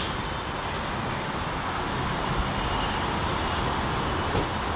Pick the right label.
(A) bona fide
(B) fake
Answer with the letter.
A